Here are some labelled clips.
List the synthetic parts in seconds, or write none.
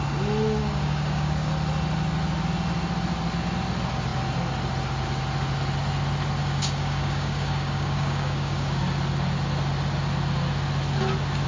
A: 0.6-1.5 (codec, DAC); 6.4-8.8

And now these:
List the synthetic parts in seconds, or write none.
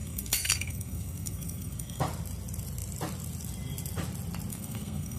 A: 0.0-2.0 (codec, SNAC); 4.5-5.2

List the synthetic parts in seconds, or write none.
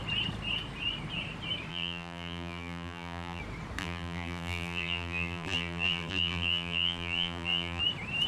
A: 1.7-3.4 (vocoder, BigVGAN v2); 3.8-7.8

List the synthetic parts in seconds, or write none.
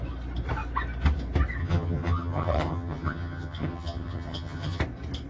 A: 1.6-4.8 (vocoder, HiFi-GAN)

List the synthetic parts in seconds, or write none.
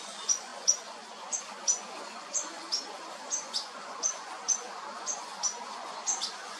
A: 0.0-6.6 (vocoder, Vocos)